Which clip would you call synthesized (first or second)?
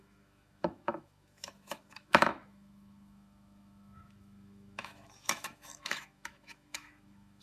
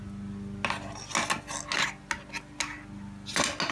first